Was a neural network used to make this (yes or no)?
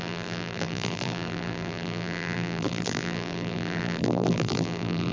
yes